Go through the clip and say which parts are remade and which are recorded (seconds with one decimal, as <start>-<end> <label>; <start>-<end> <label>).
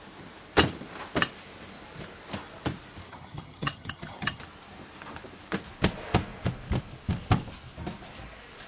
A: 0.0-3.1 recorded; 3.1-4.4 remade; 4.4-8.7 recorded